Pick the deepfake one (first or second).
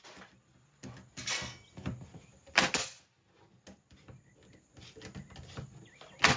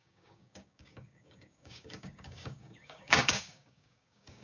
second